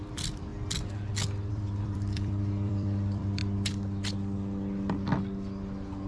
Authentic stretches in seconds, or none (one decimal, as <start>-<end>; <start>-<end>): 0.5-1.5; 3.4-6.1